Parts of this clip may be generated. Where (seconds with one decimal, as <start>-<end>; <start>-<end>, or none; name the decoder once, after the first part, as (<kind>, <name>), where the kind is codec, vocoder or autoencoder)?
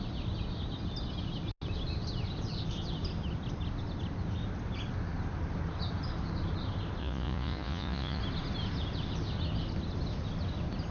7.0-8.2 (vocoder, Vocos)